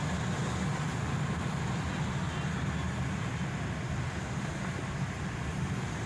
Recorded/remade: recorded